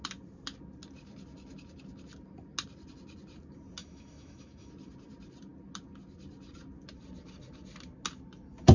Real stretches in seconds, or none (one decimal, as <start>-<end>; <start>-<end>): 0.0-3.8; 4.7-8.7